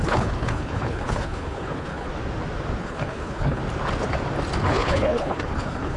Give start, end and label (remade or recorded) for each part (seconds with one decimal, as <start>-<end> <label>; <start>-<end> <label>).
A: 0.0-2.1 remade; 2.1-2.8 recorded; 2.8-3.6 remade; 3.6-4.7 recorded; 4.7-6.0 remade